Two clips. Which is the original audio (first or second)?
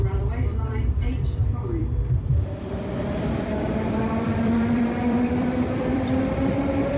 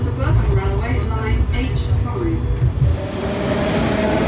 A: second